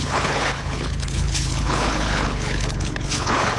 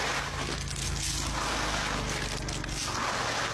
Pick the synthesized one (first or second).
first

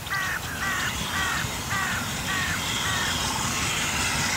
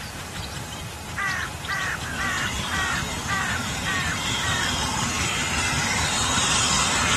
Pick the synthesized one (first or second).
second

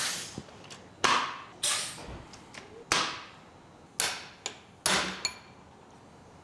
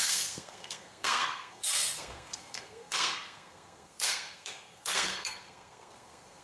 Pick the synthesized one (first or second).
second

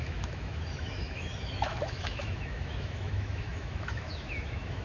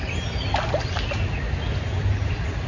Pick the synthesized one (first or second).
first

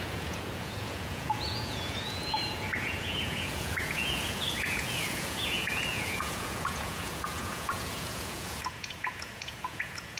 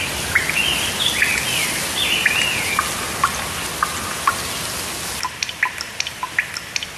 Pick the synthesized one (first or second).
first